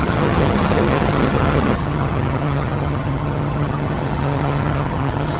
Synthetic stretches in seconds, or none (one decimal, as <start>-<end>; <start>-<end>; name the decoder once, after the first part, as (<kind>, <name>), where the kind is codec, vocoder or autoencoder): 0.0-5.4 (vocoder, HiFi-GAN)